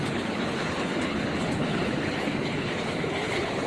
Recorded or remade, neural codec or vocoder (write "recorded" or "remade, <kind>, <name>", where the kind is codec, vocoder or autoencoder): remade, codec, HILCodec